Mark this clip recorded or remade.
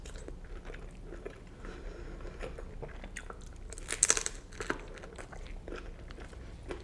recorded